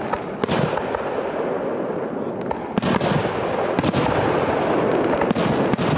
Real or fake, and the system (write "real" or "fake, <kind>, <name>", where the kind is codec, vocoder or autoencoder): real